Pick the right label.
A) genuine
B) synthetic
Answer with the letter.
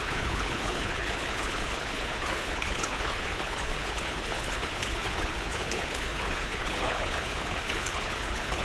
B